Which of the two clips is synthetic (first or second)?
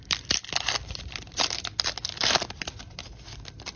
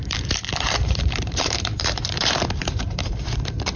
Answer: second